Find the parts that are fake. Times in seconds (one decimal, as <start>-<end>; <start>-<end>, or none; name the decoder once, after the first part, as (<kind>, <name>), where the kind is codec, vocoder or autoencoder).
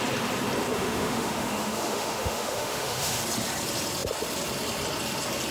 0.7-3.2 (autoencoder, DAC-VAE)